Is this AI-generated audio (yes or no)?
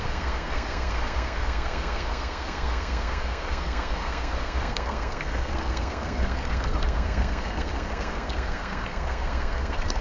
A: yes